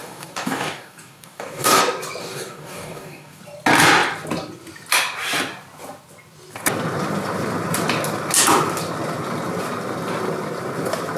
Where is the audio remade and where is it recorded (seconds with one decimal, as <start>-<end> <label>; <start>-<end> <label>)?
0.0-1.8 remade; 1.8-2.2 recorded; 2.2-3.4 remade; 3.4-11.2 recorded